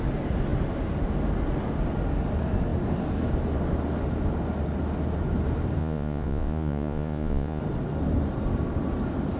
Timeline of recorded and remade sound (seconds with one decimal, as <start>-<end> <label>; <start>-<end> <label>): 0.0-5.8 recorded; 5.8-7.6 remade; 7.6-9.4 recorded